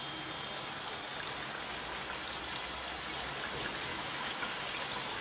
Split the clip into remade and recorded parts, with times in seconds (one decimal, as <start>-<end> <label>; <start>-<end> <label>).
0.0-3.9 recorded; 3.9-4.4 remade; 4.4-5.2 recorded

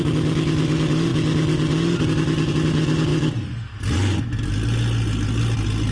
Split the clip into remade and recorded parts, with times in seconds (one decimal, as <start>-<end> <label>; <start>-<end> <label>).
0.0-5.9 recorded

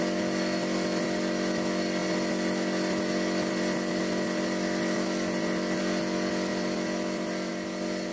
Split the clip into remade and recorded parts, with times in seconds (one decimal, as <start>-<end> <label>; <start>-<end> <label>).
0.0-8.1 recorded